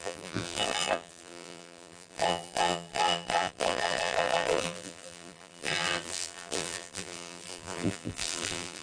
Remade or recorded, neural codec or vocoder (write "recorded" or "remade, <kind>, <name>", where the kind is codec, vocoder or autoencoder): remade, vocoder, BigVGAN v2